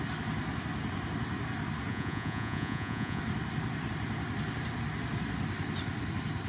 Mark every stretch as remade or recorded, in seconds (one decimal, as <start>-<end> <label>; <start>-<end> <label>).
0.0-1.9 recorded; 1.9-3.2 remade; 3.2-6.5 recorded